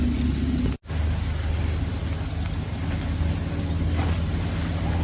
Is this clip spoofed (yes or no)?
no